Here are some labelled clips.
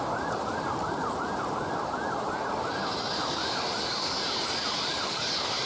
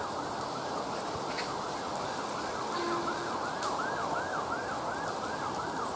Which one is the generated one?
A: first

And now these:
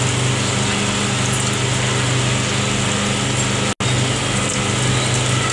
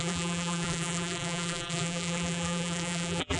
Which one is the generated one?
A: second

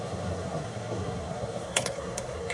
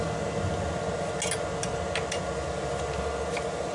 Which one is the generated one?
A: first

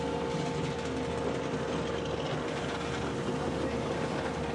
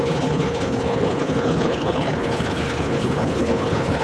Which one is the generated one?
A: second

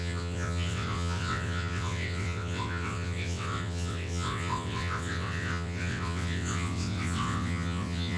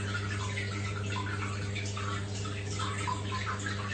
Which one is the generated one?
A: first